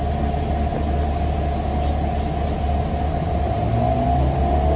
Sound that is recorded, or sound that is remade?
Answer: recorded